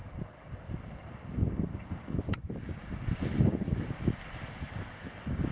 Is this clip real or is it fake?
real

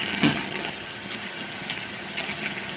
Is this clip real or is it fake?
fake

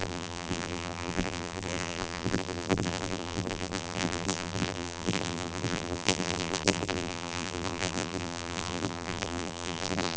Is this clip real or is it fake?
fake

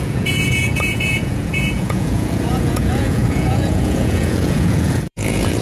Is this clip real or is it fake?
fake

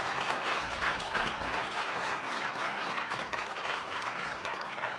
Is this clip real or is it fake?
fake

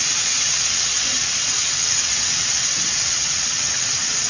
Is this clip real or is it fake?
fake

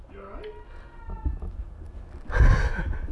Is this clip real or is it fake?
real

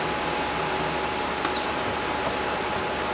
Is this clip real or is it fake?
real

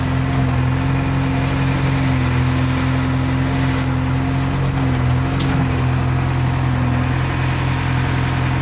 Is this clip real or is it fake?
real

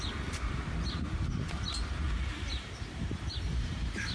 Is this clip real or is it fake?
fake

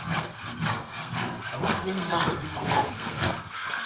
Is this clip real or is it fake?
fake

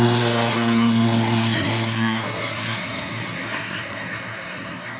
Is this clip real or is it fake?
fake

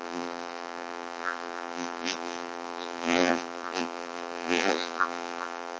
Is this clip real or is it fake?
fake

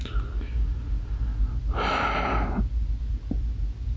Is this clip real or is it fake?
real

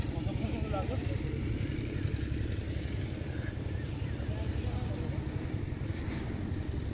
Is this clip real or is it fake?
real